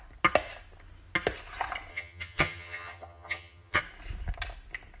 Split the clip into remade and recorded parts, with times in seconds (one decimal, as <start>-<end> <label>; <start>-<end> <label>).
0.0-1.9 recorded; 1.9-3.8 remade; 3.8-5.0 recorded